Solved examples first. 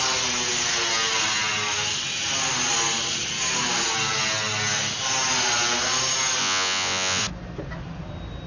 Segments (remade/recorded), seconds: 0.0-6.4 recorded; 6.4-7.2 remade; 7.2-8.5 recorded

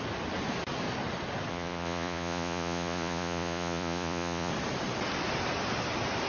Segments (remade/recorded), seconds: 0.0-1.5 recorded; 1.5-4.5 remade; 4.5-6.3 recorded

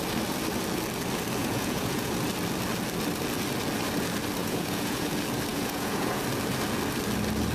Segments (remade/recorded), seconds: 0.0-1.4 recorded; 1.4-2.1 remade; 2.1-4.4 recorded; 4.4-5.1 remade; 5.1-5.5 recorded; 5.5-6.2 remade; 6.2-7.5 recorded

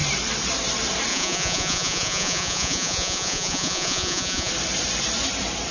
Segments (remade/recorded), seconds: 0.0-1.1 recorded; 1.1-4.5 remade; 4.5-5.7 recorded

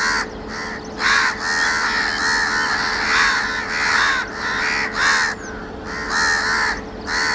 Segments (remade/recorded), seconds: 0.0-7.3 recorded